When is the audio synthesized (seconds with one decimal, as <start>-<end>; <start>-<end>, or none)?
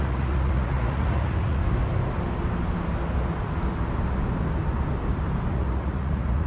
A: 0.0-1.6; 5.5-6.5